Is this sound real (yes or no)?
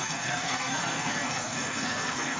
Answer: no